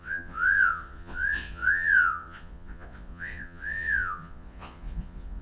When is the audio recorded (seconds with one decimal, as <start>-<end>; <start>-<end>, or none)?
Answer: none